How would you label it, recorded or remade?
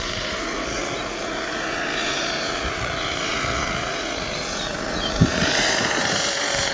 remade